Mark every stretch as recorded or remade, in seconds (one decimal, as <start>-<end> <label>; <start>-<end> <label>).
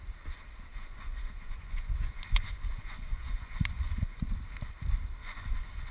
0.0-0.7 recorded; 0.7-4.2 remade; 4.2-5.2 recorded; 5.2-5.9 remade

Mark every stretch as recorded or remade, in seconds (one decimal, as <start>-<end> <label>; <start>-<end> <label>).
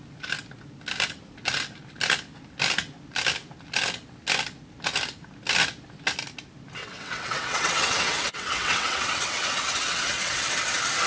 0.0-6.8 recorded; 6.8-10.4 remade; 10.4-11.1 recorded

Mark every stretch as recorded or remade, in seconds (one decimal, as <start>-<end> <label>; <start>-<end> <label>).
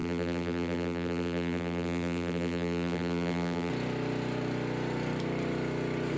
0.0-3.7 remade; 3.7-6.2 recorded